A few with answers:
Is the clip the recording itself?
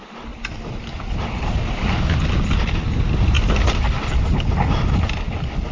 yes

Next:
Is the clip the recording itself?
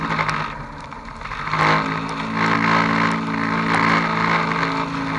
yes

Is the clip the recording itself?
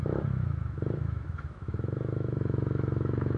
no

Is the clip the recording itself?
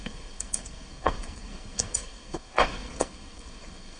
no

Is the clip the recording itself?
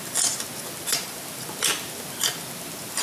yes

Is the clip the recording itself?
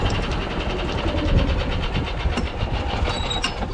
yes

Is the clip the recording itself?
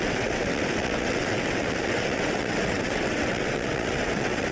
no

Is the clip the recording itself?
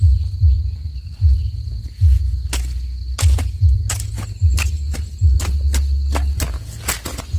yes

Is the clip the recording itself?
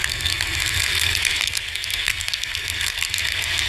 no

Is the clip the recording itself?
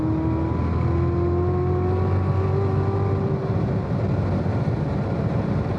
yes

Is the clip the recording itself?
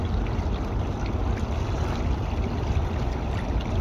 yes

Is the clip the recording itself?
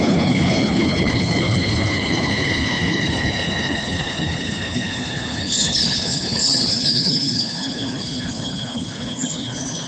no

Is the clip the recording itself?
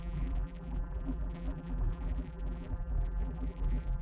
no